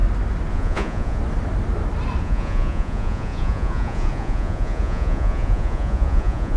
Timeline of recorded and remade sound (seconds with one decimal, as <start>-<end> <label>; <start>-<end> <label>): 0.0-0.5 recorded; 0.5-1.2 remade; 1.2-2.2 recorded; 2.2-6.6 remade